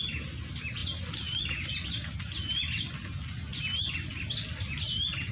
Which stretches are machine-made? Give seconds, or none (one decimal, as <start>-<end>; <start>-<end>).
none